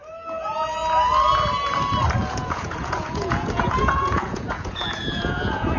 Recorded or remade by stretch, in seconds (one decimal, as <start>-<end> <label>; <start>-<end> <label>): 0.0-2.2 recorded; 2.2-5.8 remade